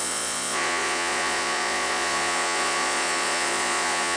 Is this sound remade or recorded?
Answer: remade